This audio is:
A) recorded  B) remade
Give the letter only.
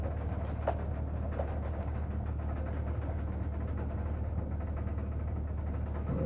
A